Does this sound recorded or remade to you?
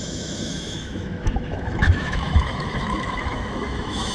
remade